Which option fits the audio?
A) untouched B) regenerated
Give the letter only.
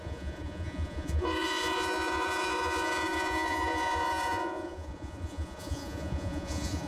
B